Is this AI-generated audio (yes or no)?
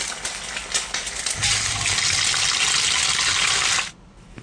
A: no